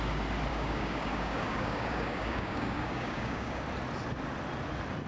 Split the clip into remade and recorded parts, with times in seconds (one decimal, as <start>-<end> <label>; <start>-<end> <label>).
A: 0.0-0.5 recorded; 0.5-3.6 remade; 3.6-5.1 recorded